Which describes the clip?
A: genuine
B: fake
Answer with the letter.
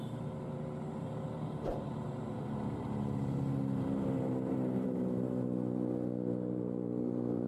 B